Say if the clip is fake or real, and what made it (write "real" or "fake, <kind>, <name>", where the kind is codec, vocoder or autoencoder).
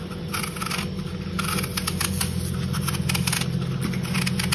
real